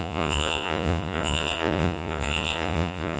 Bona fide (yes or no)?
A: no